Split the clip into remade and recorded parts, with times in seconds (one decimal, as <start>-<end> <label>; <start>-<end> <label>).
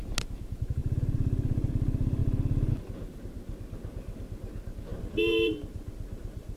0.0-0.8 recorded; 0.8-1.7 remade; 1.7-4.9 recorded; 4.9-6.6 remade